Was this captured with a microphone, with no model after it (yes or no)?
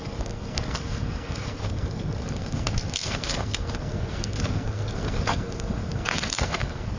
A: no